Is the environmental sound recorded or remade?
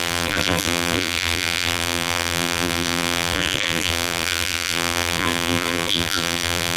remade